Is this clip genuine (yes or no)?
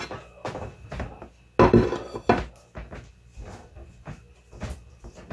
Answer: yes